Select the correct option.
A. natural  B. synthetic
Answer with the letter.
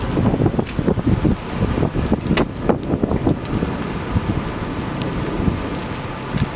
A